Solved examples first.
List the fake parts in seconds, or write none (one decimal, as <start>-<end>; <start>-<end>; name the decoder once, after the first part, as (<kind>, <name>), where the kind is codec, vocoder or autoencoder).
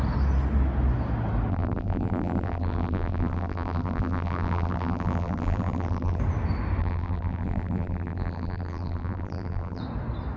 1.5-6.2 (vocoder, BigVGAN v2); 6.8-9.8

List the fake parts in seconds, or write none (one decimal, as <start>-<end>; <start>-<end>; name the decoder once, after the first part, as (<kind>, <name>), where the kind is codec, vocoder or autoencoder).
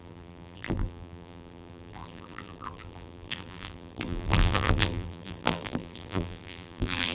0.0-7.1 (vocoder, BigVGAN v2)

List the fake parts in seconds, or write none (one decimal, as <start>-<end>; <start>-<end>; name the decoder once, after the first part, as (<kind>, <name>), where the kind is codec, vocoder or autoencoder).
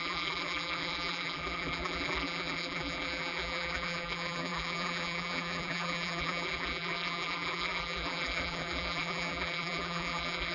0.0-10.5 (vocoder, BigVGAN v2)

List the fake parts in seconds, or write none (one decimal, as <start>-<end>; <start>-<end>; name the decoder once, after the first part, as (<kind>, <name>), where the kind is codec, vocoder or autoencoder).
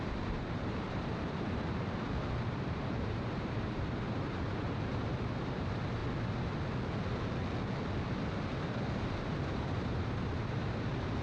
0.0-6.0 (vocoder, BigVGAN v2); 9.0-11.2